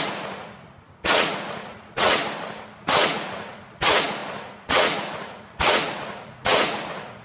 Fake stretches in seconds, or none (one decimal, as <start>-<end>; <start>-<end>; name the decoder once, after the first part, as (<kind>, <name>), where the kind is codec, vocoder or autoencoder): 0.0-2.2 (vocoder, Vocos); 2.8-7.2